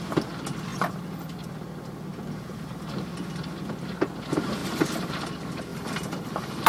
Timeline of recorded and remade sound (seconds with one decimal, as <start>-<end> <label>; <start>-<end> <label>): 0.0-0.7 recorded; 0.7-1.4 remade; 1.4-4.6 recorded; 4.6-5.2 remade; 5.2-5.7 recorded; 5.7-6.7 remade